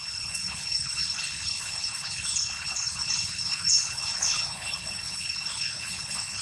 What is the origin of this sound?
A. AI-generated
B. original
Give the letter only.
A